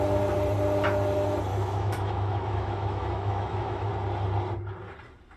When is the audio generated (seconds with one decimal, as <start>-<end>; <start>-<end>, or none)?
1.5-3.9